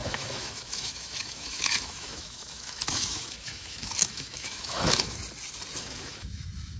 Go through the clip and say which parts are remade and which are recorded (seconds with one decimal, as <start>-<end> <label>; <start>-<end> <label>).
0.0-5.2 remade; 5.2-5.8 recorded; 5.8-6.8 remade